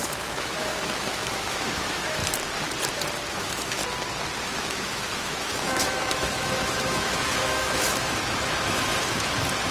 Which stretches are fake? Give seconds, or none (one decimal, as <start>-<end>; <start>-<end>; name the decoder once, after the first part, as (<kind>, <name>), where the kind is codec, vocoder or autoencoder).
0.0-2.2 (autoencoder, DAC-VAE); 3.3-3.8; 4.4-8.9